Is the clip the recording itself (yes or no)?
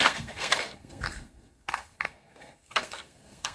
no